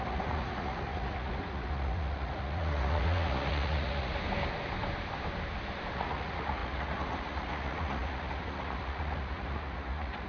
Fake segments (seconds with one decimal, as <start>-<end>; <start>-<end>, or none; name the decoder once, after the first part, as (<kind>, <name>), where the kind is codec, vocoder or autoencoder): 0.0-4.1 (vocoder, Vocos); 5.9-10.3